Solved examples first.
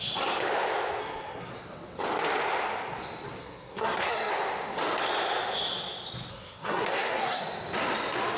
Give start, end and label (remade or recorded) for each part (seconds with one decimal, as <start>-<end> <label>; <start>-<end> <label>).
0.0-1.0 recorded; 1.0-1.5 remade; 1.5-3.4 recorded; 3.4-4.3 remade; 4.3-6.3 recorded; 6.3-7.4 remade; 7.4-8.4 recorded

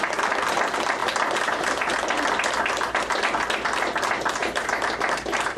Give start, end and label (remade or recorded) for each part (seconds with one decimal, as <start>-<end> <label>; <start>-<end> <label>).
0.0-4.4 recorded; 4.4-5.6 remade

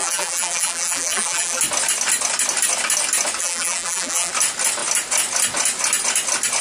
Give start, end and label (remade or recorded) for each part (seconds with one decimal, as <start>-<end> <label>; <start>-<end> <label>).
0.0-1.6 remade; 1.6-3.4 recorded; 3.4-4.3 remade; 4.3-6.6 recorded

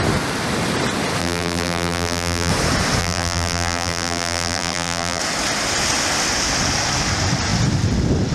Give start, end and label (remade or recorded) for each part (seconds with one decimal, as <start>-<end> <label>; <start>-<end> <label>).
0.0-1.2 recorded; 1.2-2.5 remade; 2.5-3.0 recorded; 3.0-5.2 remade; 5.2-8.3 recorded

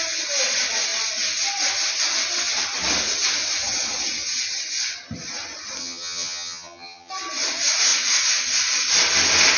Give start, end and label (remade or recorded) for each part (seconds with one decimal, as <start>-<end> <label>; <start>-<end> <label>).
0.0-5.8 recorded; 5.8-7.1 remade; 7.1-9.6 recorded

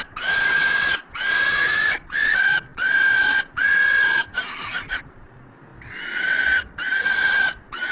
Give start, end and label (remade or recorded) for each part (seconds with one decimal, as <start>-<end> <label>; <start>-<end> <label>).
0.0-5.7 remade; 5.7-7.2 recorded; 7.2-7.9 remade

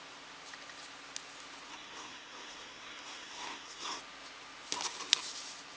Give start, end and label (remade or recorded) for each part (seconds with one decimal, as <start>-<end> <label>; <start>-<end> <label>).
0.0-1.7 recorded; 1.7-4.0 remade; 4.0-5.8 recorded

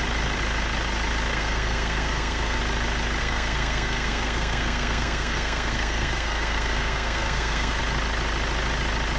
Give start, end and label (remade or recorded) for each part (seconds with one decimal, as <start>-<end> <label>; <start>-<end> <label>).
0.0-1.3 recorded; 1.3-2.6 remade; 2.6-3.2 recorded; 3.2-7.8 remade; 7.8-9.2 recorded